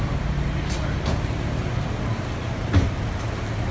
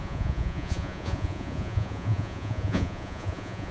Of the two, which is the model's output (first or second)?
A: second